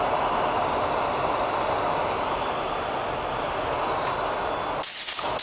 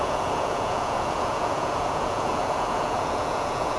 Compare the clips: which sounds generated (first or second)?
second